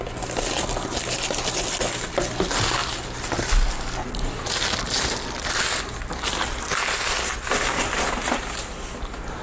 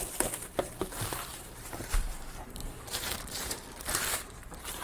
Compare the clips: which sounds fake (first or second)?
second